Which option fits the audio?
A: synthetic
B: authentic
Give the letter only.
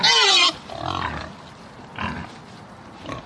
B